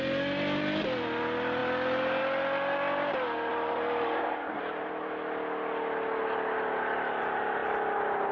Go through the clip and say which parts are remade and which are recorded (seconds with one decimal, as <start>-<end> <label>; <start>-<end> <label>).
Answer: 0.0-3.5 recorded; 3.5-4.9 remade; 4.9-8.3 recorded